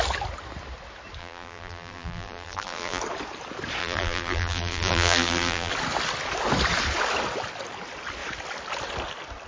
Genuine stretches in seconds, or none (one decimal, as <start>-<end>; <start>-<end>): 0.0-1.2; 3.0-3.8; 5.7-9.5